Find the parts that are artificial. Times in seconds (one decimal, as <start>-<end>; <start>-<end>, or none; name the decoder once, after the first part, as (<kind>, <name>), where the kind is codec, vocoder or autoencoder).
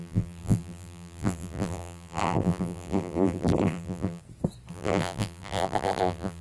0.0-4.2 (vocoder, BigVGAN v2); 4.7-6.4